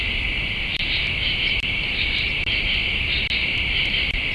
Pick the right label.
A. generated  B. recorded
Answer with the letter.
A